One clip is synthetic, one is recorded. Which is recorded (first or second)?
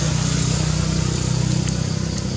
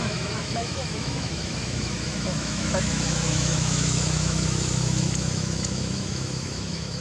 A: first